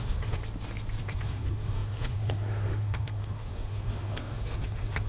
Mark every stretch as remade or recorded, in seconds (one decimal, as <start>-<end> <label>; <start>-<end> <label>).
0.0-0.4 remade; 0.4-1.0 recorded; 1.0-5.1 remade